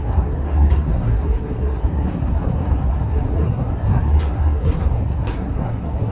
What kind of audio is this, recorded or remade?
remade